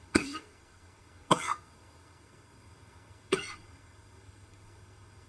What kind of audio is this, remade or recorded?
remade